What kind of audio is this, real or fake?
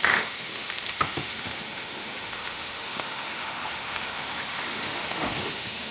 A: fake